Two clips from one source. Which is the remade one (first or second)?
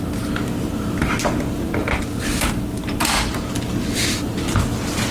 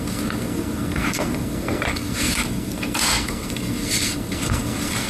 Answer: second